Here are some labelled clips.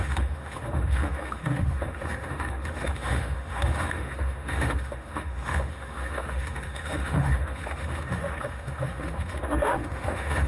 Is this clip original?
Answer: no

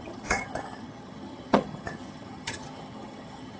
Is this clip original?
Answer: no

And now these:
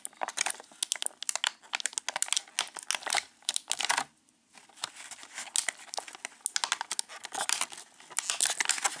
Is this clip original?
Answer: yes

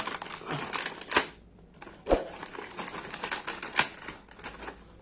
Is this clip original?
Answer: yes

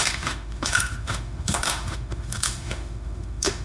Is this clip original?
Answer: no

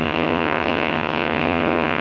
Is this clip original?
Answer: no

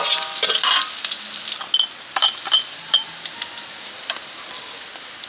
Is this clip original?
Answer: yes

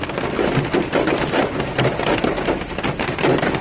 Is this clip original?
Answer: yes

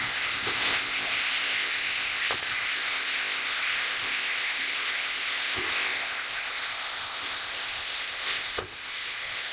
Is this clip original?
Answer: no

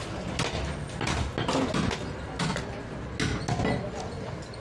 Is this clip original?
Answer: yes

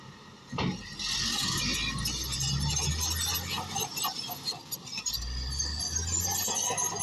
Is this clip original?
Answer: yes